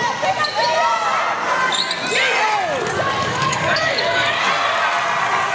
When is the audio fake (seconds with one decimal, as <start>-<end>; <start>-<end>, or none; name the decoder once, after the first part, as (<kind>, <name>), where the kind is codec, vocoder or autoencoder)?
3.2-4.5 (codec, DAC)